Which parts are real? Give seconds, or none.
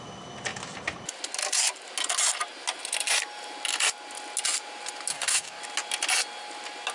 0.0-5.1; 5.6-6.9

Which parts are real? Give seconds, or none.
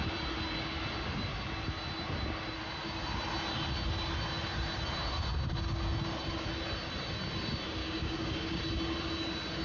0.0-7.8; 8.6-9.6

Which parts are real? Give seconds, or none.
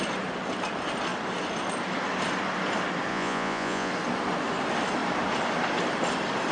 0.0-3.1; 3.9-6.5